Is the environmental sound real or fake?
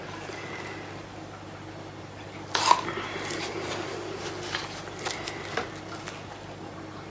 real